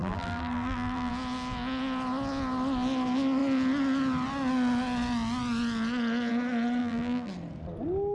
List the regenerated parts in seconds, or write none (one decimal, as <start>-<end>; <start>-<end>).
0.0-1.1; 6.8-7.3